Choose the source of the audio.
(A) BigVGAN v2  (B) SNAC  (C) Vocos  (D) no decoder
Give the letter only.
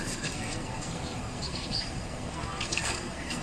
B